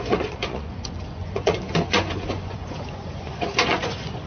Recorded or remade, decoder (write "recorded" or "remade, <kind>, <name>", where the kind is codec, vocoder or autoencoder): remade, vocoder, Vocos